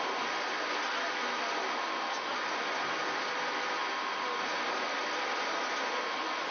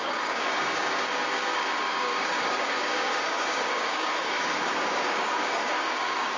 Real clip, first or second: first